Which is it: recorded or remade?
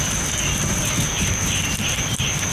recorded